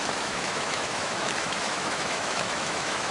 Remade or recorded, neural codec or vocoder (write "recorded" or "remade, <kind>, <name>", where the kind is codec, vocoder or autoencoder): remade, autoencoder, DAC-VAE